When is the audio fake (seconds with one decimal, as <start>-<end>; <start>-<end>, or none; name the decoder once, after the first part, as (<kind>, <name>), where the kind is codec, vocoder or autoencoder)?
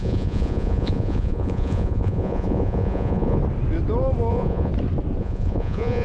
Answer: 0.0-3.4 (vocoder, Vocos); 4.3-4.7; 5.2-6.0